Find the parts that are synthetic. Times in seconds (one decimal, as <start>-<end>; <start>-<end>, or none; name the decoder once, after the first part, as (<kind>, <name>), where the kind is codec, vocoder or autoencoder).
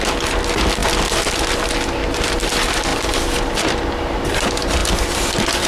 2.0-2.5 (vocoder, BigVGAN v2); 2.9-4.3; 4.8-5.3